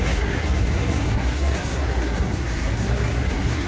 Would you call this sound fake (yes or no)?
yes